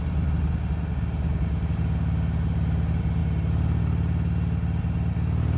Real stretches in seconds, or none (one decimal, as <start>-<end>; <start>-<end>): 0.0-5.6